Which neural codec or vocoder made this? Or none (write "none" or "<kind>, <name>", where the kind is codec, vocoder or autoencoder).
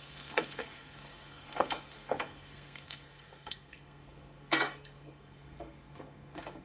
codec, SNAC